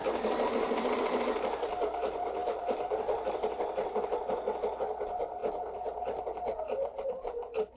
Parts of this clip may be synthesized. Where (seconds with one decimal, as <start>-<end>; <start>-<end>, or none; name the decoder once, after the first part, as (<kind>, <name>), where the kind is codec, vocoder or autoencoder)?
none